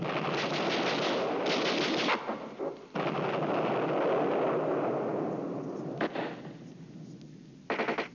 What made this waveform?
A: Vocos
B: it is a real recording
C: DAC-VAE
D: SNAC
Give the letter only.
B